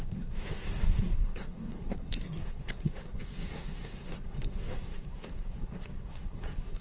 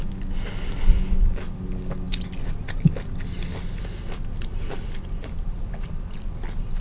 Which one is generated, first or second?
first